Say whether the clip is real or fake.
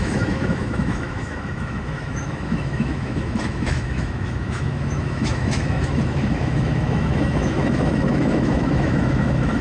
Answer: fake